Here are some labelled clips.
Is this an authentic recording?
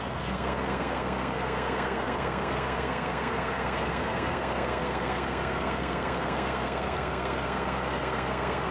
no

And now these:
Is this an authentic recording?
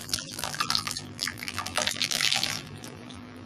no